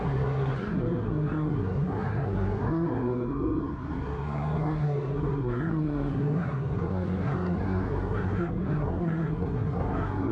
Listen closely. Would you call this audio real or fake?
fake